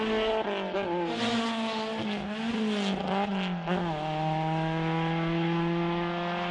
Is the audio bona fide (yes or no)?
yes